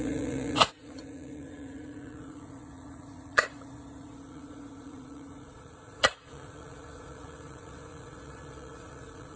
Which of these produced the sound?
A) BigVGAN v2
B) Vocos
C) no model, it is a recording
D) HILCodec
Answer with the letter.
B